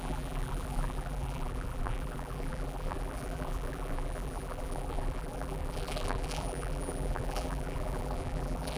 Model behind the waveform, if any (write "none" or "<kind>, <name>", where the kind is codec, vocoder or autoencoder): vocoder, BigVGAN v2